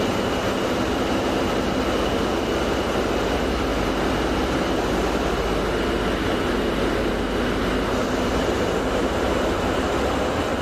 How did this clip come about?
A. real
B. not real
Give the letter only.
A